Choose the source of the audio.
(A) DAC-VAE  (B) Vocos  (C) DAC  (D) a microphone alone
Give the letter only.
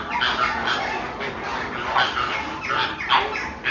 D